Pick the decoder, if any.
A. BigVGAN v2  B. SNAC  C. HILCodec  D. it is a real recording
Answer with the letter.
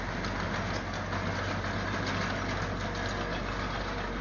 D